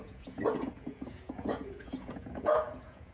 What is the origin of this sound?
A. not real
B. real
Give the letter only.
A